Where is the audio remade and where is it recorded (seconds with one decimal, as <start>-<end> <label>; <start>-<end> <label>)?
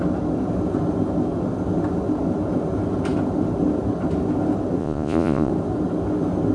0.0-4.8 recorded; 4.8-5.5 remade; 5.5-6.5 recorded